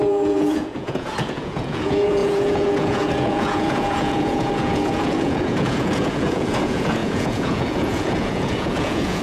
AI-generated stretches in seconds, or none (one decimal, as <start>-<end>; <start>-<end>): 0.0-9.2